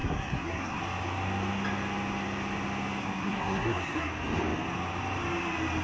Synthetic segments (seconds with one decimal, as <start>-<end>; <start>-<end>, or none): 0.0-0.8; 3.0-4.1